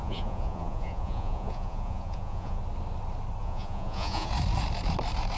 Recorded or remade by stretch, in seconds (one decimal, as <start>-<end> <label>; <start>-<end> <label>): 0.0-2.6 remade; 2.6-3.4 recorded; 3.4-4.3 remade; 4.3-5.4 recorded